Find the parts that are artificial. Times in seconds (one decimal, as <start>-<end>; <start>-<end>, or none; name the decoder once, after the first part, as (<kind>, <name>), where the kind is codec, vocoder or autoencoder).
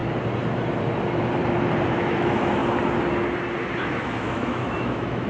1.9-2.6 (autoencoder, DAC-VAE); 3.8-5.3